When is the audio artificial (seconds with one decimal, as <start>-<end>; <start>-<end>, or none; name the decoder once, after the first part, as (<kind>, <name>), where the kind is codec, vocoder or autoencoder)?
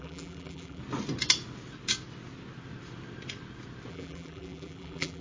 0.0-0.8 (vocoder, BigVGAN v2); 3.9-5.2